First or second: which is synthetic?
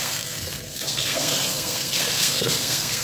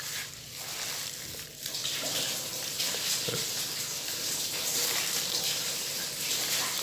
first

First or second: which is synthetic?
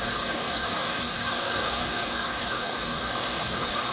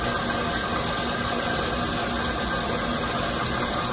first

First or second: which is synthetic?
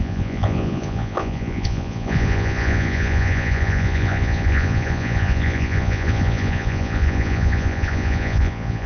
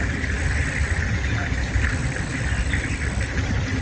first